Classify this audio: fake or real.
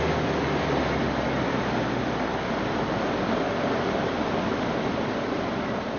real